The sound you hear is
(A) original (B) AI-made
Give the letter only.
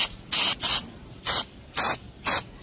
A